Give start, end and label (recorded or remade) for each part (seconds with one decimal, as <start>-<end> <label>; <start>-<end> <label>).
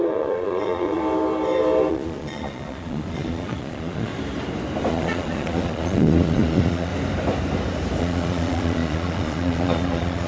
0.0-1.0 remade; 1.0-1.9 recorded; 1.9-4.1 remade; 4.1-4.9 recorded; 4.9-6.9 remade; 6.9-8.0 recorded; 8.0-10.3 remade